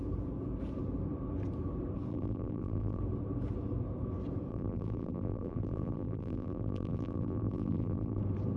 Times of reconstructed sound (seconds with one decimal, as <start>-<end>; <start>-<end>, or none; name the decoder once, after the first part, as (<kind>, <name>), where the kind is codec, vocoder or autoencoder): 2.1-3.0 (vocoder, BigVGAN v2); 4.5-8.2